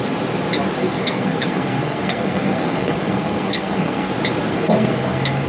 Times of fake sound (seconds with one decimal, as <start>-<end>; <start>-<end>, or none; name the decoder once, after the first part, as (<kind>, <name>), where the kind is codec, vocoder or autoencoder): 0.8-4.1 (codec, SNAC); 4.5-5.5